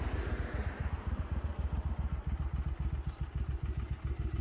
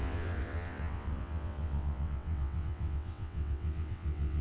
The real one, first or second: first